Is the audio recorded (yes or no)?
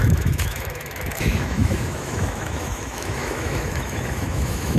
no